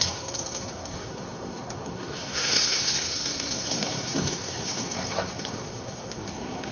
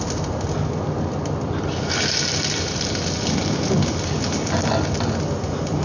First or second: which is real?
second